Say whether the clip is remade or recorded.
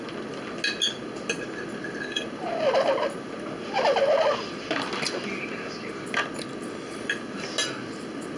recorded